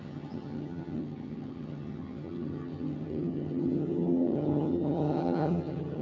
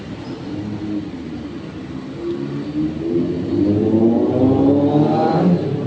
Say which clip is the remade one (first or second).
first